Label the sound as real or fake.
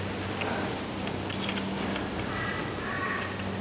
real